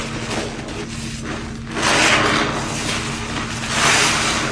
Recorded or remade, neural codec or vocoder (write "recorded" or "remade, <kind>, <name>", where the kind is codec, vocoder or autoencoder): recorded